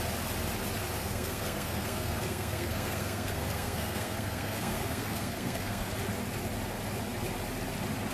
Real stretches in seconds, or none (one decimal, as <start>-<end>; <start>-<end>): 0.0-1.0; 5.9-8.1